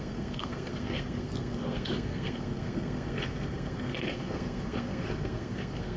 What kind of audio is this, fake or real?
fake